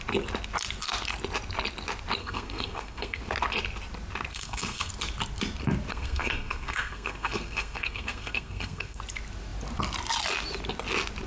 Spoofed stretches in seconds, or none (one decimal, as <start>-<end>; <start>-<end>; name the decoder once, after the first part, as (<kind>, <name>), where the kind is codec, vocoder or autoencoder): 2.2-3.2 (codec, SNAC); 4.3-4.9; 5.9-9.0